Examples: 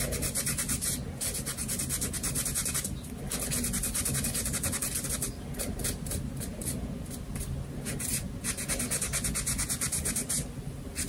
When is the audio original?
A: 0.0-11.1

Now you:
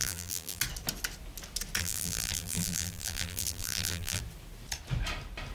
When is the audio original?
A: 0.6-1.8; 4.2-5.5

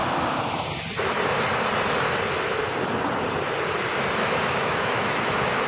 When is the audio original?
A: 0.0-3.9

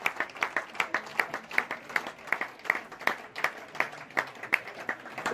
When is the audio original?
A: 1.1-4.3

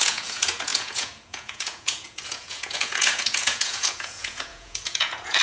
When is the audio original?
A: none